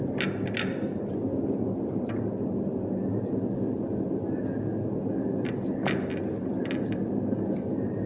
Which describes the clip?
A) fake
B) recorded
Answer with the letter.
B